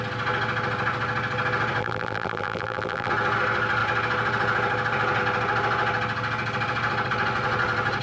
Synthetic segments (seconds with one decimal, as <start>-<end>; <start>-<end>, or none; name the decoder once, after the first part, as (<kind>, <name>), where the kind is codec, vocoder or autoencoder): 1.8-3.1 (vocoder, BigVGAN v2)